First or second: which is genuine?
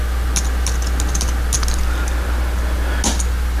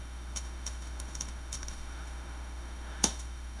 first